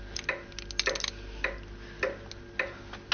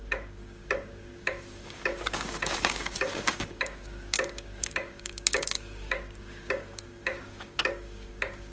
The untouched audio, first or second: first